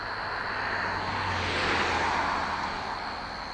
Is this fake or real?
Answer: real